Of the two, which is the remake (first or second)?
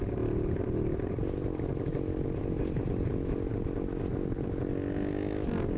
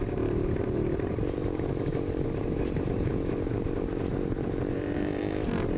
second